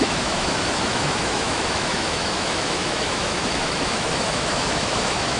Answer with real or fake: fake